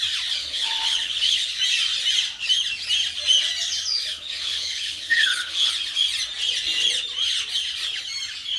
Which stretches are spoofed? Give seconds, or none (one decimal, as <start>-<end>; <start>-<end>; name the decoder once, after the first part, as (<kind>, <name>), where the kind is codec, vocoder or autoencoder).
0.4-1.6 (codec, HILCodec); 4.1-5.7